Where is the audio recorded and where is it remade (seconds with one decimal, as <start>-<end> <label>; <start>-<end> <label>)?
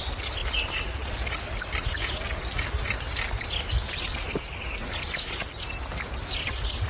0.0-6.9 recorded